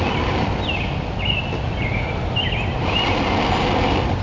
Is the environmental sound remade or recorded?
recorded